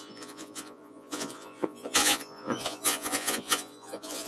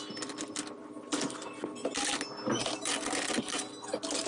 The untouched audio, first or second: second